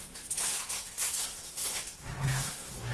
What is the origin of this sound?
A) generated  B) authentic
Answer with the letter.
A